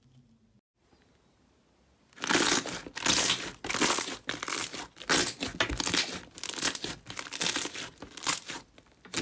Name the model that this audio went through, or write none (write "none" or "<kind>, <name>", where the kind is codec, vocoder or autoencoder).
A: none